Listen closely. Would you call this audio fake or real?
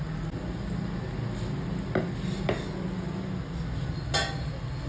real